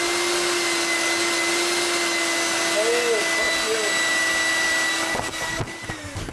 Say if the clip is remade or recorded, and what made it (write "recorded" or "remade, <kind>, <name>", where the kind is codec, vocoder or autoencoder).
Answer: recorded